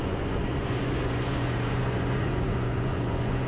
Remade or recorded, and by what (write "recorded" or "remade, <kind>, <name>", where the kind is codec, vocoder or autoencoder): remade, vocoder, Vocos